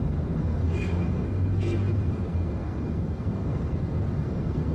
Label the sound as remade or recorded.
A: remade